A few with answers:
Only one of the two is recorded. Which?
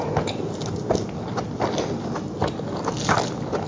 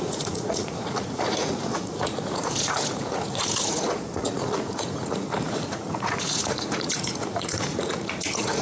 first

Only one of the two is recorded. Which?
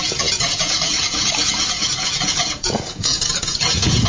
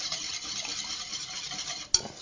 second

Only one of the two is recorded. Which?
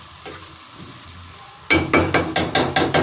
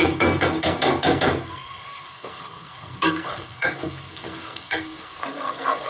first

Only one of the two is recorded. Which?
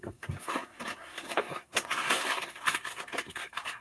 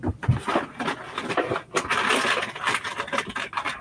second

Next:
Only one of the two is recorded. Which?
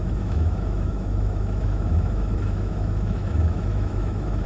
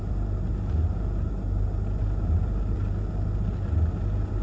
second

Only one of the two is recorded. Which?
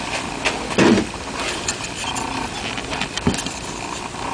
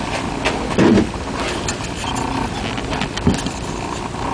second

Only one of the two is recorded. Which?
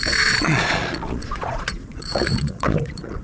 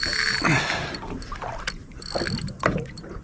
second